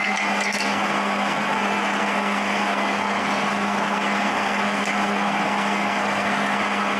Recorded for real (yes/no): no